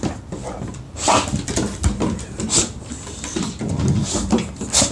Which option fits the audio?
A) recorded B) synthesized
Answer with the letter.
A